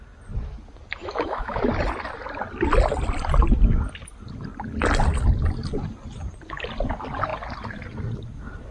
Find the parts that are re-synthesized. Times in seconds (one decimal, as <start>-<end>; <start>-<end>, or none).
1.0-1.6